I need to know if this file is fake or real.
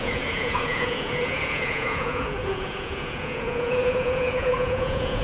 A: fake